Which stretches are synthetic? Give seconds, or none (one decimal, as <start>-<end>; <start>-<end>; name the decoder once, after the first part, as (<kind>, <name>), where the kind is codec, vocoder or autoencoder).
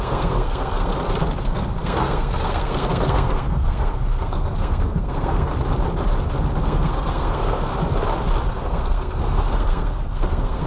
0.0-0.9 (codec, SNAC); 1.4-5.5; 6.6-7.7; 8.5-10.7